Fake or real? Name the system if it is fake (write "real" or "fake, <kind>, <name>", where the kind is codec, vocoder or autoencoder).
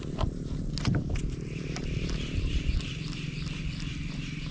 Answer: real